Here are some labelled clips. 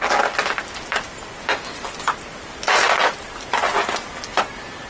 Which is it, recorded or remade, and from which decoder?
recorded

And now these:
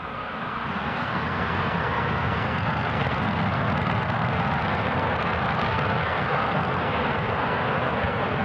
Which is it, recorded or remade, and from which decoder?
remade, codec, SNAC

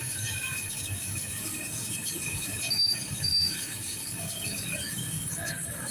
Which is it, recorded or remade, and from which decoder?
remade, codec, DAC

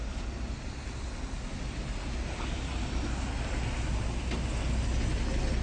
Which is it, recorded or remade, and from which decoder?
recorded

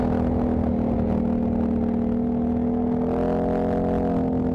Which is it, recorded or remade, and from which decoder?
recorded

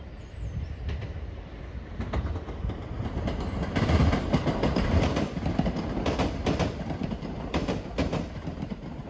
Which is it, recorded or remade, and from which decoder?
recorded